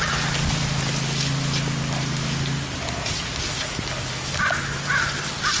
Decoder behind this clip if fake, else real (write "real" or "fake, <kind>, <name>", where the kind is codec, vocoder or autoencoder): real